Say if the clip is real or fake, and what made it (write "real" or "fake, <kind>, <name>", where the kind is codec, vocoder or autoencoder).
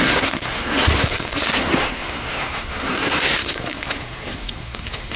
fake, codec, SNAC